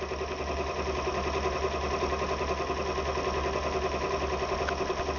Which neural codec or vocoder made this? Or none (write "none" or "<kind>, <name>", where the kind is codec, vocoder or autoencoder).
none